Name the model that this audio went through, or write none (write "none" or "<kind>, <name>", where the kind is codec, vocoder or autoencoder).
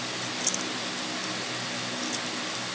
none